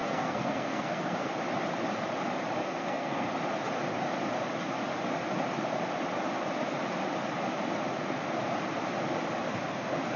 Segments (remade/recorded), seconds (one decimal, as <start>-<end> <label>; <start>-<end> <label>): 0.0-1.3 remade; 1.3-2.6 recorded; 2.6-3.3 remade; 3.3-10.2 recorded